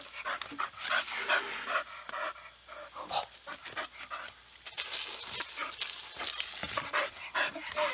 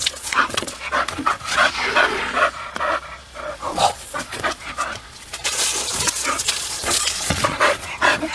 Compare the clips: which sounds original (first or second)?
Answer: first